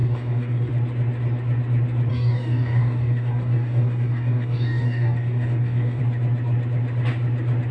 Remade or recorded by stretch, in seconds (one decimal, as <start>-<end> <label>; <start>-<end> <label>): 0.0-0.7 remade; 0.7-2.1 recorded; 2.1-6.0 remade; 6.0-7.7 recorded